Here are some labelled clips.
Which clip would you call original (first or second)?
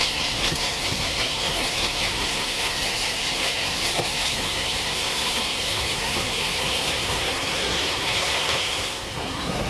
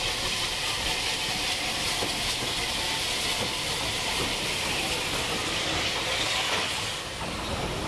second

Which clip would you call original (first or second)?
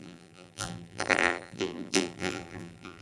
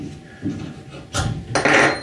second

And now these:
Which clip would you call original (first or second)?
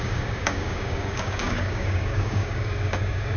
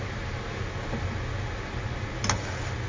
second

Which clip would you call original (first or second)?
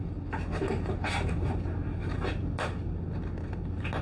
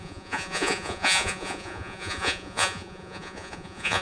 first